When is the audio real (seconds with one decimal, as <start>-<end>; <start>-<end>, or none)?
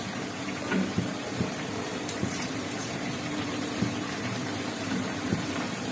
none